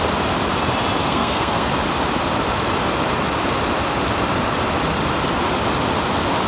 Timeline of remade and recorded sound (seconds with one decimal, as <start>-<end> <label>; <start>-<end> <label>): 0.0-1.0 recorded; 1.0-1.7 remade; 1.7-6.5 recorded